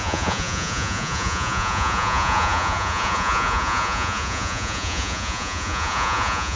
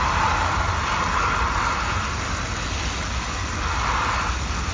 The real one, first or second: second